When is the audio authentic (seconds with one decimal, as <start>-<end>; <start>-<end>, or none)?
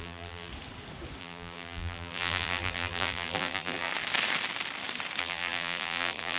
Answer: 0.5-1.2; 3.9-5.2